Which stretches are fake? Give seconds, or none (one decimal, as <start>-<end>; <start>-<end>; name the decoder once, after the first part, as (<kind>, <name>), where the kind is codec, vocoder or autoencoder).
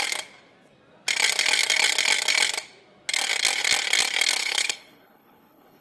4.4-5.8 (codec, HILCodec)